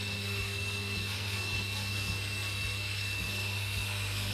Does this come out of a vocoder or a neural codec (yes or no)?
yes